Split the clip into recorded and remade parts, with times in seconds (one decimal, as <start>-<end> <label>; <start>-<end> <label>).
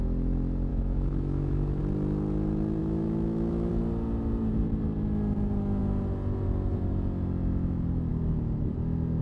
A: 0.0-0.7 recorded; 0.7-1.8 remade; 1.8-2.8 recorded; 2.8-3.7 remade; 3.7-9.2 recorded